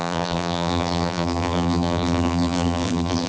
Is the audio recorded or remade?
remade